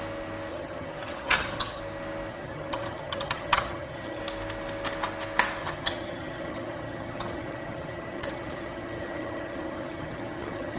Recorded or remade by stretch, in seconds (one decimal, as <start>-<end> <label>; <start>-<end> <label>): 0.0-0.5 recorded; 0.5-1.8 remade; 1.8-2.3 recorded; 2.3-4.2 remade; 4.2-5.6 recorded; 5.6-10.8 remade